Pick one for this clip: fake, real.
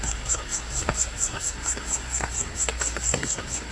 fake